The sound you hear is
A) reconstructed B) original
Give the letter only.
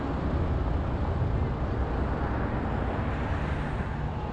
B